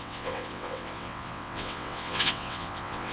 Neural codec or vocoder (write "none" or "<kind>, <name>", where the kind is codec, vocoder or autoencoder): vocoder, WaveNeXt